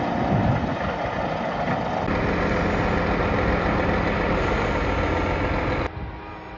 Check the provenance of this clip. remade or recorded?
recorded